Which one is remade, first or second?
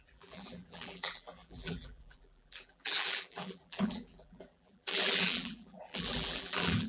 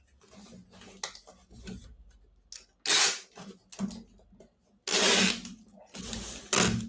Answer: first